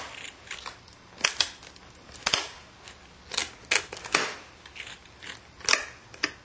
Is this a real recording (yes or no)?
yes